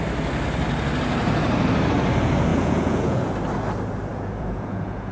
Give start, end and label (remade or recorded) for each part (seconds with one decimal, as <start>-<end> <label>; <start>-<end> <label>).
0.0-2.5 recorded; 2.5-3.3 remade; 3.3-4.1 recorded; 4.1-5.1 remade